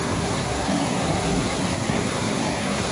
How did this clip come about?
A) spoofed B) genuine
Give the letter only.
A